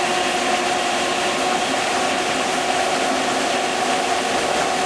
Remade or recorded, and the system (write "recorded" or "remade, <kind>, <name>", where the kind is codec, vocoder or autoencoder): recorded